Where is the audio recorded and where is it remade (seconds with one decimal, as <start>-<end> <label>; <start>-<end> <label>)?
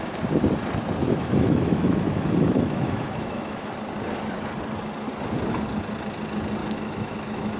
0.0-1.0 recorded; 1.0-3.7 remade; 3.7-6.6 recorded; 6.6-7.6 remade